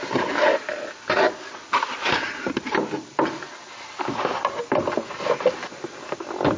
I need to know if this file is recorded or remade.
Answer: recorded